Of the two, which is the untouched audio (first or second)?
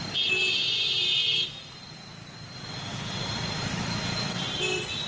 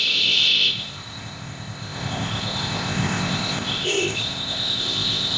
first